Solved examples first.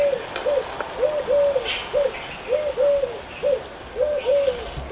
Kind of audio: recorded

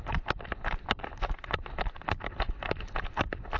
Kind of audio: recorded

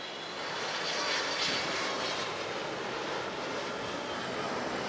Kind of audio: recorded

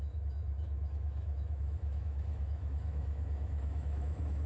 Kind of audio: remade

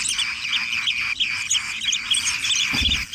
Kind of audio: recorded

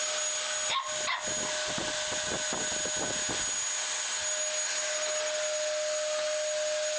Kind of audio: recorded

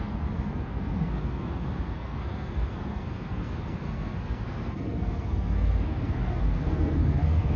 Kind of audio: remade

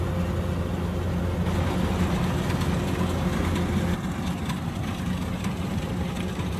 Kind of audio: recorded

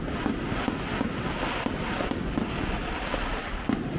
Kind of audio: recorded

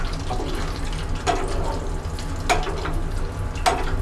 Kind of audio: recorded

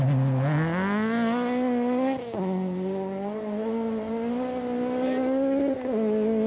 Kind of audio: recorded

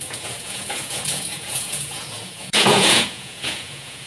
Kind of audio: remade